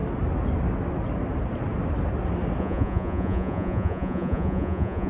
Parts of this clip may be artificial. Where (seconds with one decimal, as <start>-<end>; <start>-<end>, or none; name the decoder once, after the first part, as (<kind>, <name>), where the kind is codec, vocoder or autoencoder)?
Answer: 2.6-5.1 (vocoder, Vocos)